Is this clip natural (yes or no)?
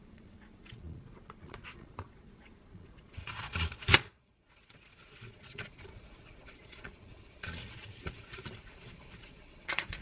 no